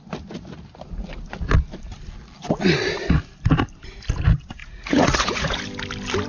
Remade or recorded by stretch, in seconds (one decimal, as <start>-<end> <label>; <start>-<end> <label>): 0.0-4.6 recorded; 4.6-5.6 remade; 5.6-6.3 recorded